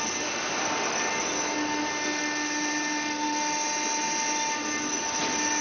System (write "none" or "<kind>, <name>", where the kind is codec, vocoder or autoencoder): none